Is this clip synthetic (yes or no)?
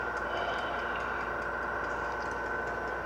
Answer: no